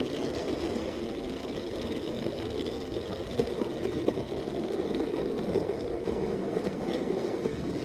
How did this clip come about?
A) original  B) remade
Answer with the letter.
B